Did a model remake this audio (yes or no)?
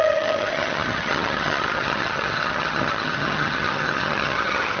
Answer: yes